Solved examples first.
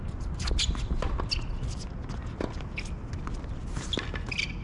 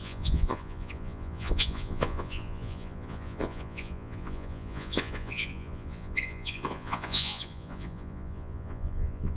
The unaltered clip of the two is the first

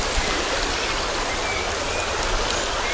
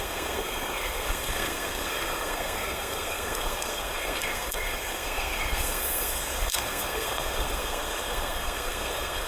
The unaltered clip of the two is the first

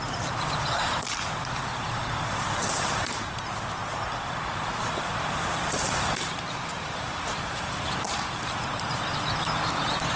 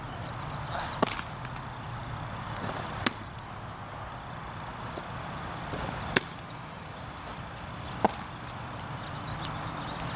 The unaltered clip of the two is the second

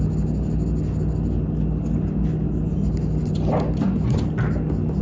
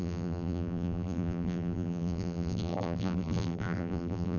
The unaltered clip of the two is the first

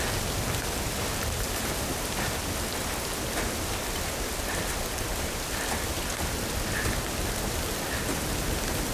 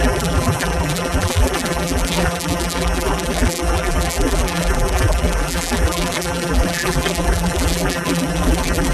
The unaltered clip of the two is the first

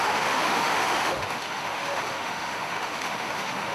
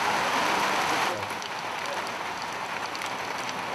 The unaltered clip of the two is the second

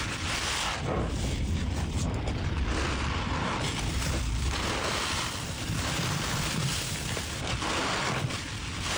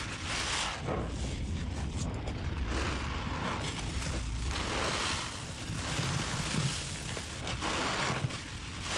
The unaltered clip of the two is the second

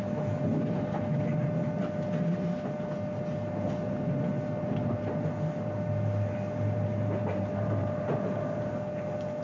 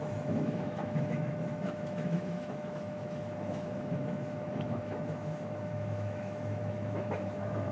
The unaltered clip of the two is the first